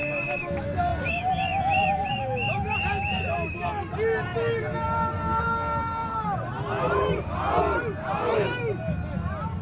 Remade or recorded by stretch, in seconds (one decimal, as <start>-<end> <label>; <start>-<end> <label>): 0.0-6.0 recorded; 6.0-7.3 remade; 7.3-9.6 recorded